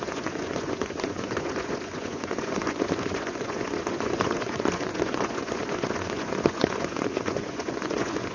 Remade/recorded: remade